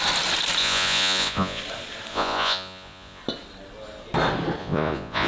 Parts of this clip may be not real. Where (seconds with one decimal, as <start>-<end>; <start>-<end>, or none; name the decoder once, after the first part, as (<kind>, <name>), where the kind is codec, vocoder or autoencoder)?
0.6-1.6 (vocoder, Vocos); 2.1-3.2; 4.6-5.3